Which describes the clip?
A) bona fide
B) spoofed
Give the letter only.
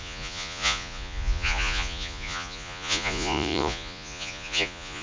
B